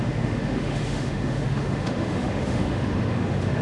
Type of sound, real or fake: fake